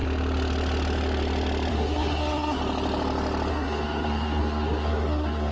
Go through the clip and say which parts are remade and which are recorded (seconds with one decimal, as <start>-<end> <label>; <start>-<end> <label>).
0.0-1.7 recorded; 1.7-2.6 remade; 2.6-3.5 recorded; 3.5-5.5 remade